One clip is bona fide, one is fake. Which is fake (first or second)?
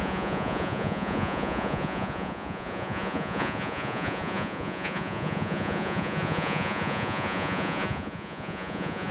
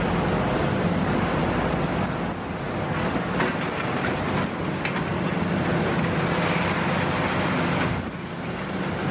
first